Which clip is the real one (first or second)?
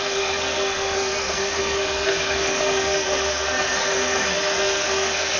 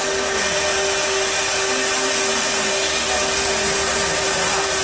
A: second